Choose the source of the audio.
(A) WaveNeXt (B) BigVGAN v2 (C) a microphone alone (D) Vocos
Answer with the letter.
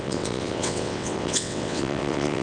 A